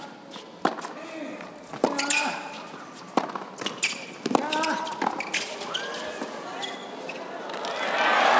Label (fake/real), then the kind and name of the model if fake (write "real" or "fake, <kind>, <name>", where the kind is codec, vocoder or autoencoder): real